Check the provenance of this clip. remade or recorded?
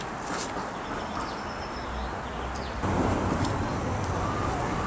recorded